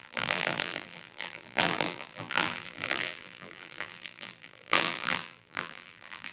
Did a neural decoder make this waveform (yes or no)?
yes